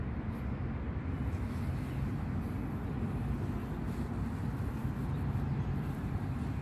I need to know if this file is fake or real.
real